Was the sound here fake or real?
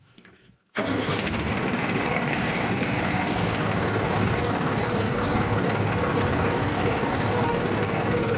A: fake